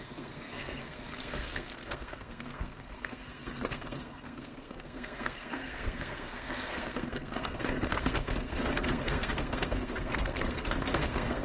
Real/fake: fake